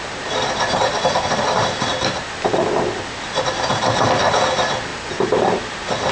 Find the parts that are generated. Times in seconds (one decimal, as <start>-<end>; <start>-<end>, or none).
none